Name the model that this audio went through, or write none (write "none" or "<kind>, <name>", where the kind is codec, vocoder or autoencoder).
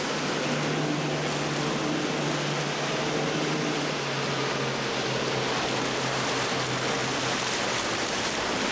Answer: none